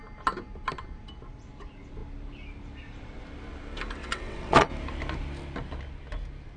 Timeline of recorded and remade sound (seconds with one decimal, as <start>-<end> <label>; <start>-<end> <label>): 0.0-4.0 recorded; 4.0-4.7 remade; 4.7-6.6 recorded